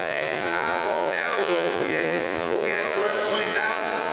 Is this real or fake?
fake